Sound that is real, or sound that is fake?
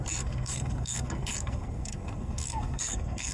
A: fake